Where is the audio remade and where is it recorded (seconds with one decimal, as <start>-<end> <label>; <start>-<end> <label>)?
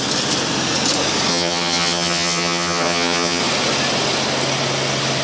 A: 0.0-1.3 recorded; 1.3-3.4 remade; 3.4-5.2 recorded